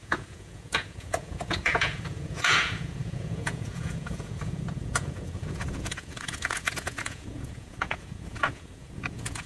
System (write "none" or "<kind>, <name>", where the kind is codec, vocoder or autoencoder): vocoder, Vocos